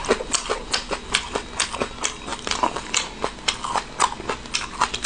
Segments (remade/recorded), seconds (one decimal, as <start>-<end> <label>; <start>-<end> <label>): 0.0-5.1 recorded